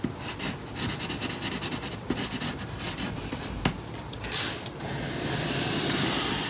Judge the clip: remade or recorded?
recorded